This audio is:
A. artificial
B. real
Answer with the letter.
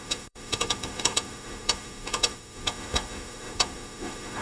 A